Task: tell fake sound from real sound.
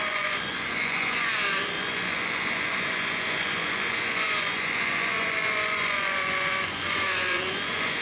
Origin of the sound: fake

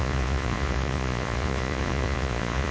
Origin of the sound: fake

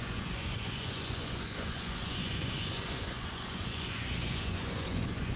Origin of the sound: fake